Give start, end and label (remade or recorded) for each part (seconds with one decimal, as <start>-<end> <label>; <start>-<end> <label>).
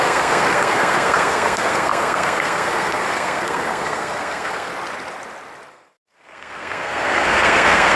0.0-4.7 remade; 4.7-5.7 recorded; 5.7-8.0 remade